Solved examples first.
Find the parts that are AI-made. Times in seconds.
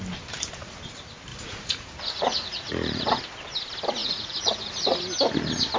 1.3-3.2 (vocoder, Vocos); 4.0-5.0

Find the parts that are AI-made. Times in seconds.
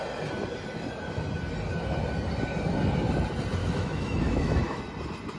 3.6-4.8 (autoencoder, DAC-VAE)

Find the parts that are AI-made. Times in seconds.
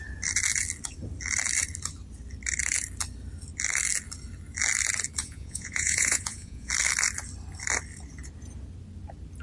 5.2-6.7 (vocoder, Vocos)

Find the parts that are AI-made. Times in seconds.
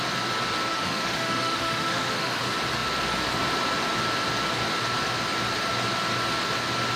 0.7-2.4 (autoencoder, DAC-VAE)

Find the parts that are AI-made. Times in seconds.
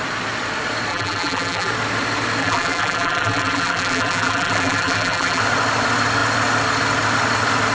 0.9-1.7 (vocoder, BigVGAN v2); 2.4-5.4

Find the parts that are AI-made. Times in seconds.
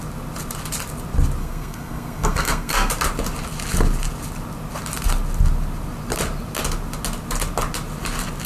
1.4-2.9 (codec, SNAC)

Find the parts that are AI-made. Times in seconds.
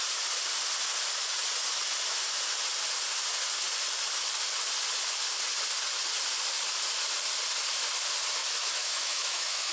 8.4-9.7 (autoencoder, DAC-VAE)